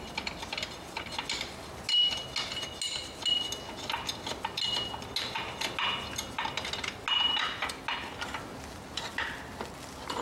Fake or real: real